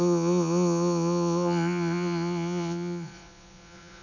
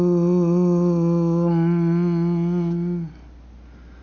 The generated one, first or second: first